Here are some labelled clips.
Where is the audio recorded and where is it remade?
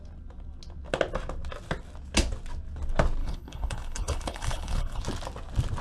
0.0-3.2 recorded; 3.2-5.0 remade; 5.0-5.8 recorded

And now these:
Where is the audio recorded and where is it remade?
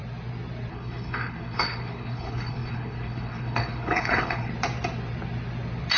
0.0-0.7 recorded; 0.7-4.5 remade; 4.5-6.0 recorded